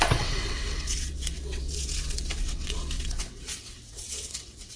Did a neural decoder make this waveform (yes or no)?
yes